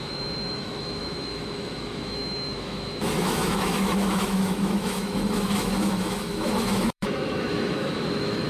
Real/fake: fake